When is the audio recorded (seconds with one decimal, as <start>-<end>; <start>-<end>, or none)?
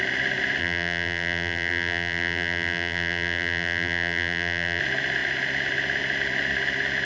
0.0-0.6; 4.8-7.0